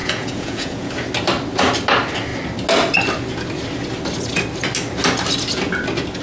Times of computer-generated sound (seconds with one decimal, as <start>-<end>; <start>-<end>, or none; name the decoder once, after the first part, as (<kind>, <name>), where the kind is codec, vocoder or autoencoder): 0.0-0.9 (vocoder, Vocos)

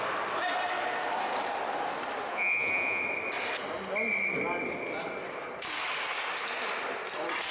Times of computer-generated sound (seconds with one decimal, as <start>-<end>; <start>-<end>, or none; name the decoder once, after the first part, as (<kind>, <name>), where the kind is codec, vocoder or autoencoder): 2.3-3.0 (vocoder, Vocos)